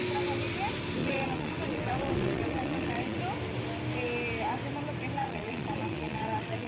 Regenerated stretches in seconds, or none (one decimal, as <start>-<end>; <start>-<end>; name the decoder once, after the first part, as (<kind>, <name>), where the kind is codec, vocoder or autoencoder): 1.0-3.2 (vocoder, WaveNeXt); 5.2-6.7